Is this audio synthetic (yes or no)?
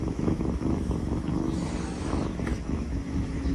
yes